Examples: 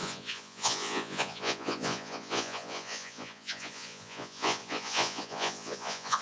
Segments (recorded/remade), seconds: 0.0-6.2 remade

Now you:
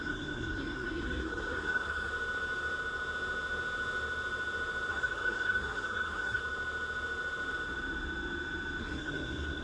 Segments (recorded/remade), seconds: 0.0-2.1 remade; 2.1-4.9 recorded; 4.9-6.4 remade; 6.4-8.8 recorded; 8.8-9.6 remade

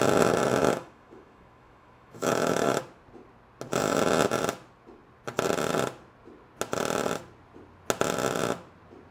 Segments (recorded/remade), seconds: 0.0-0.6 recorded; 0.6-2.8 remade; 2.8-9.1 recorded

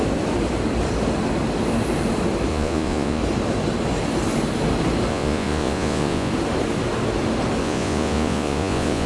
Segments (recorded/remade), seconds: 0.0-2.5 recorded; 2.5-3.2 remade; 3.2-5.1 recorded; 5.1-6.3 remade; 6.3-7.6 recorded; 7.6-9.1 remade

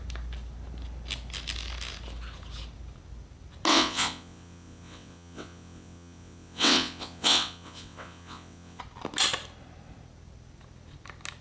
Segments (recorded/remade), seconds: 0.0-3.7 recorded; 3.7-8.8 remade; 8.8-11.4 recorded

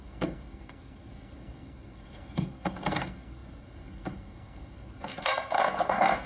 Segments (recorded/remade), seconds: 0.0-6.3 remade